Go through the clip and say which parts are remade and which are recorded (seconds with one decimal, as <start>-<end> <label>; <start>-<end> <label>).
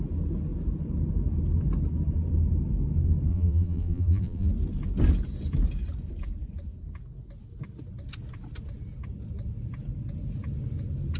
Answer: 0.0-3.3 recorded; 3.3-4.5 remade; 4.5-11.2 recorded